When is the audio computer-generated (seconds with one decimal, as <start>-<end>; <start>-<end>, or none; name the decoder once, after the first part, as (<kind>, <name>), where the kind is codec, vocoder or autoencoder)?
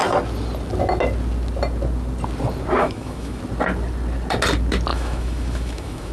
2.8-3.4 (autoencoder, DAC-VAE); 4.9-6.1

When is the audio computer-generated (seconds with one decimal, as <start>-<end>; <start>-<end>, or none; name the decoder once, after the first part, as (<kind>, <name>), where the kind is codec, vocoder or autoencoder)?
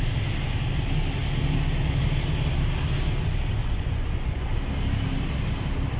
3.6-4.5 (vocoder, Vocos)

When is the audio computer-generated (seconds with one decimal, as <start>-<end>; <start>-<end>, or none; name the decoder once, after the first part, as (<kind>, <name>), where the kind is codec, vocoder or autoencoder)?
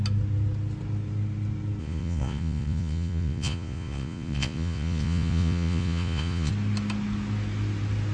1.8-6.5 (vocoder, Vocos)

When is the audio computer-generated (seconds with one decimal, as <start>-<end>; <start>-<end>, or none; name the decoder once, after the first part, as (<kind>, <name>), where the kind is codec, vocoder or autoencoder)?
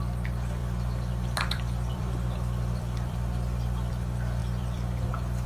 0.6-3.9 (vocoder, BigVGAN v2); 4.4-5.1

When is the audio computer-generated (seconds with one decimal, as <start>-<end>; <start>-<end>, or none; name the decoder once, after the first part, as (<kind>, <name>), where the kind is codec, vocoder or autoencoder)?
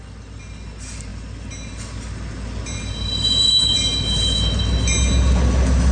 none